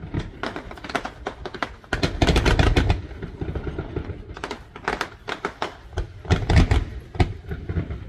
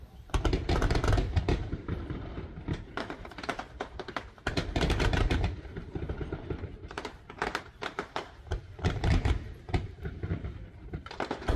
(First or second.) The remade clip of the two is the second